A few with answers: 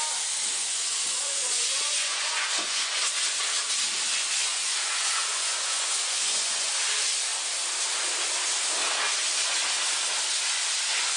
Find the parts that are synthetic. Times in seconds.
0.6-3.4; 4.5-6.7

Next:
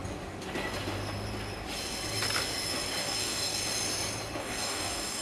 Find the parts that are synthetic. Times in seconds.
3.0-3.6; 4.4-5.2

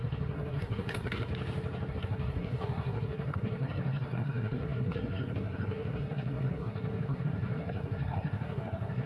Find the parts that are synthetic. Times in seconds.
0.0-1.3; 1.9-9.1

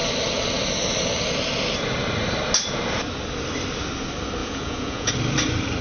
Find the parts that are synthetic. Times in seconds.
4.4-5.1

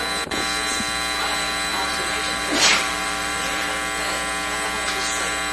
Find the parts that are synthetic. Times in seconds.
1.7-3.7